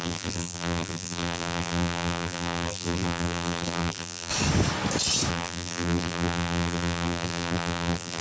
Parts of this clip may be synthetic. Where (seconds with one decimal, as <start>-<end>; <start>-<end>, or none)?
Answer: 0.0-4.3; 5.3-8.2